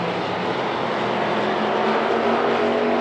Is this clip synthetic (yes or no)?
no